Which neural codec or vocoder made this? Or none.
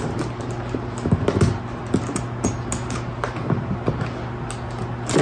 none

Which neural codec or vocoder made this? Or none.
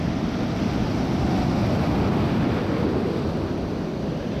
none